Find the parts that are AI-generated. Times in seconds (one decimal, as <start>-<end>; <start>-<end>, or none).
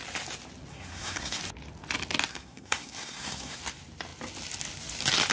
0.7-1.4; 2.3-3.6